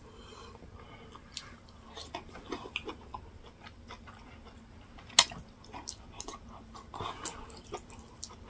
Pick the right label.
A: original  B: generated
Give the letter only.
A